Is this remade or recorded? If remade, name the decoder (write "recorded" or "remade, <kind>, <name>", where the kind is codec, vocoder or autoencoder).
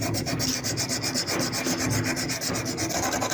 recorded